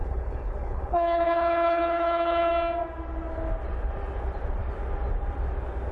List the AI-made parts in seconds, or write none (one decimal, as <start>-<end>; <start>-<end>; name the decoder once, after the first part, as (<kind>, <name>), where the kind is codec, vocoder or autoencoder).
0.0-2.5 (codec, HILCodec)